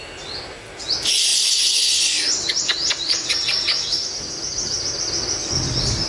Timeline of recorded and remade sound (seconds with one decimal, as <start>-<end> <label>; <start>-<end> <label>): 0.0-1.3 recorded; 1.3-1.9 remade; 1.9-2.8 recorded; 2.8-3.3 remade; 3.3-3.9 recorded; 3.9-4.9 remade; 4.9-6.1 recorded